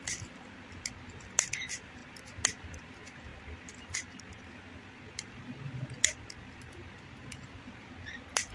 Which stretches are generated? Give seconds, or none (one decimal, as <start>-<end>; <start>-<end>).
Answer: none